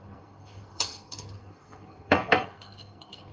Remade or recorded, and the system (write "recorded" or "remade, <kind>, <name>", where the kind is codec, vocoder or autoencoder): remade, codec, SNAC